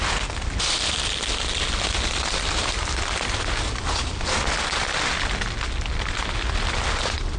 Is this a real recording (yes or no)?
yes